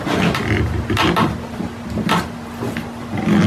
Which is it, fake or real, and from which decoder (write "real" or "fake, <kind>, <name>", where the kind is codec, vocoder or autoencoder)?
real